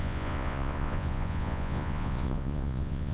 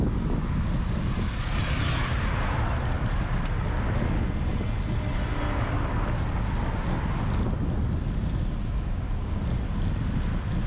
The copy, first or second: first